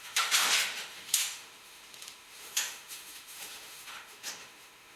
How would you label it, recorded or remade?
remade